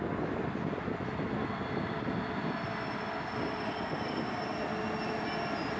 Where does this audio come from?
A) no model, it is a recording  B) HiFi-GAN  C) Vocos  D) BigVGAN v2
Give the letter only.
A